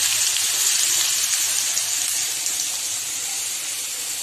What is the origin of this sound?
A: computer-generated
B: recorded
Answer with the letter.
B